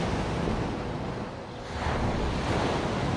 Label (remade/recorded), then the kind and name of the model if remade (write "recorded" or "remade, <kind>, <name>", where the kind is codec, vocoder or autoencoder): recorded